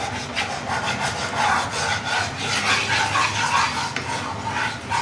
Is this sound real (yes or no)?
yes